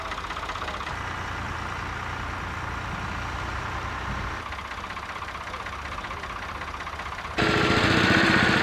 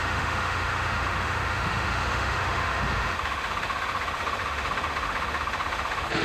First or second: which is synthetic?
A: second